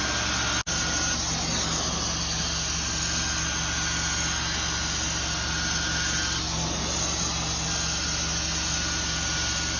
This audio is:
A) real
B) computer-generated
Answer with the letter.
A